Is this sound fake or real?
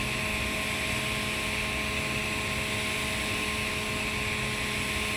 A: real